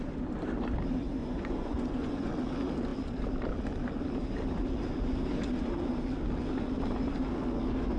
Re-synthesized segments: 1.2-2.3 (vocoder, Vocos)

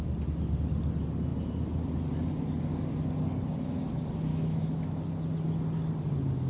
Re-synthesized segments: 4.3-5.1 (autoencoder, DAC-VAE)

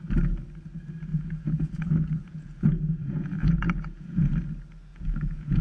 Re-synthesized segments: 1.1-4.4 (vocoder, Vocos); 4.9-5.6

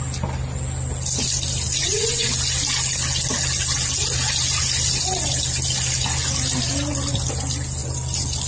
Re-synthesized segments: 1.8-2.3 (vocoder, Vocos)